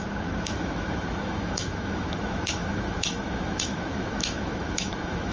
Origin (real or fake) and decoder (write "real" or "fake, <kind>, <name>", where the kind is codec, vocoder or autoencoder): fake, autoencoder, DAC-VAE